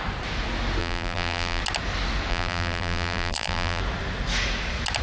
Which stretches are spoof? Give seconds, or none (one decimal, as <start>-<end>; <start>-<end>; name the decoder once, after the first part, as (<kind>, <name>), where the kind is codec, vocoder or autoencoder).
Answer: 0.8-1.6 (vocoder, BigVGAN v2); 2.3-3.8